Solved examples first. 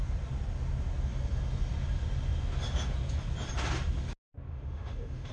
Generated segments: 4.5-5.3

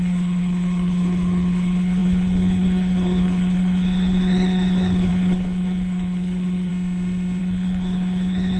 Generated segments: 0.0-6.7; 7.4-8.6